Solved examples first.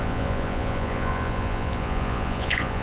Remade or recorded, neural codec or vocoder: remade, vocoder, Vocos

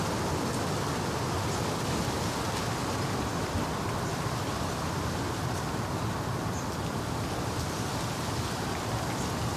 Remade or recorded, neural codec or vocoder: recorded